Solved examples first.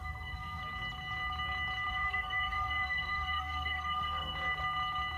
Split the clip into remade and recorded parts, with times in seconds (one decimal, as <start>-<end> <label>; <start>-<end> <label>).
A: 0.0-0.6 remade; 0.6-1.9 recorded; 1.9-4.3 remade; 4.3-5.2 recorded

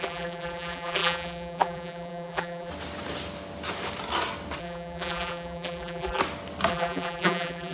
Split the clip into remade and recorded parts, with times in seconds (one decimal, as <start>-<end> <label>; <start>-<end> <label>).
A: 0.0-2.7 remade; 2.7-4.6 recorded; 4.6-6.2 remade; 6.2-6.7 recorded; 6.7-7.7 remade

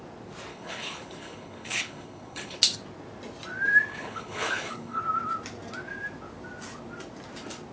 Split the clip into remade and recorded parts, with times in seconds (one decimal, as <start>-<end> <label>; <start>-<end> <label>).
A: 0.0-0.5 recorded; 0.5-2.6 remade; 2.6-3.9 recorded; 3.9-5.0 remade; 5.0-7.7 recorded

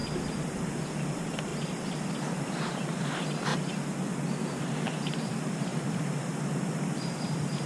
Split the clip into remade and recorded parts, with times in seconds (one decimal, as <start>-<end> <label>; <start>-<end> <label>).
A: 0.0-1.5 remade; 1.5-2.1 recorded; 2.1-3.5 remade; 3.5-4.6 recorded; 4.6-7.7 remade